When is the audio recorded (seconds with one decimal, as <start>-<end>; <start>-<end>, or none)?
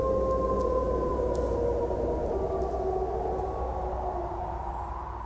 0.0-5.3